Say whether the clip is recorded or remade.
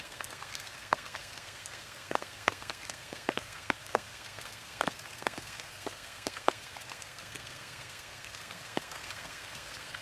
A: remade